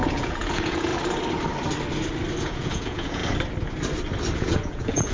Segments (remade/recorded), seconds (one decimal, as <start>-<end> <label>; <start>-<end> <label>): 0.0-0.9 remade; 0.9-2.4 recorded; 2.4-3.2 remade; 3.2-4.4 recorded; 4.4-5.1 remade